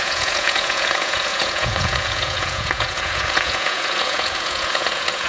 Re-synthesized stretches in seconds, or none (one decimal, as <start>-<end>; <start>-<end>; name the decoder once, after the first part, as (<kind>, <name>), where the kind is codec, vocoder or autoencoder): 0.0-5.3 (vocoder, Vocos)